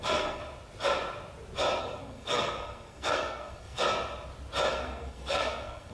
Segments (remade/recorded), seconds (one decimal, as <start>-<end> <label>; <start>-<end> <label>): 0.0-0.4 remade; 0.4-1.8 recorded; 1.8-3.8 remade; 3.8-4.7 recorded; 4.7-5.9 remade